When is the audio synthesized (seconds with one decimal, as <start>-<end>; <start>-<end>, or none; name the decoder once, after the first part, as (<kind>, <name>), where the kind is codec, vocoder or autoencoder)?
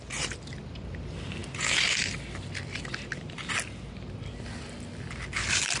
none